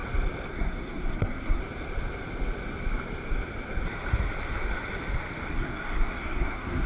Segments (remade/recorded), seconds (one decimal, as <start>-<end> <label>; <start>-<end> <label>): 0.0-0.5 recorded; 0.5-1.6 remade; 1.6-5.5 recorded; 5.5-6.9 remade